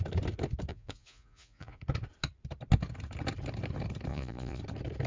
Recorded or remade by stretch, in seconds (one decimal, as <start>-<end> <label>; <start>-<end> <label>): 0.0-0.7 recorded; 0.7-1.8 remade; 1.8-4.1 recorded; 4.1-4.6 remade; 4.6-5.1 recorded